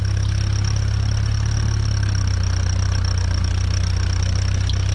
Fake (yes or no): no